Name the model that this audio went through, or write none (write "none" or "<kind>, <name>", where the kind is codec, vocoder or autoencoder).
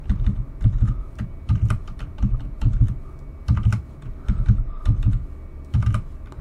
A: none